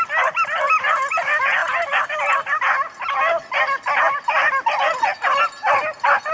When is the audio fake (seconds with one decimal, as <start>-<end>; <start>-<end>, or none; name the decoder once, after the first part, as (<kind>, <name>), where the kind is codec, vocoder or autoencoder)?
none